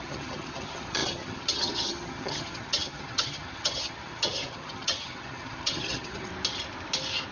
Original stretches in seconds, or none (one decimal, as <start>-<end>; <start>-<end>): 6.3-7.3